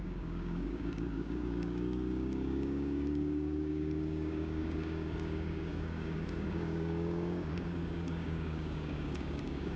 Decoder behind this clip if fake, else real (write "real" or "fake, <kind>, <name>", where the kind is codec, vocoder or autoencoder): fake, codec, DAC